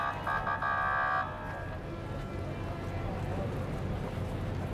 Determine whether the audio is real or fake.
real